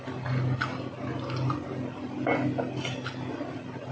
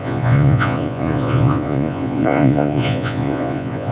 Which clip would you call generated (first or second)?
second